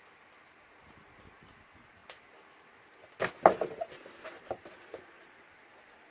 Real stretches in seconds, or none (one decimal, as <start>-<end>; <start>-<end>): 0.0-6.1